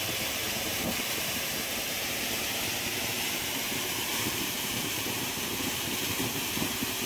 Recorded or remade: remade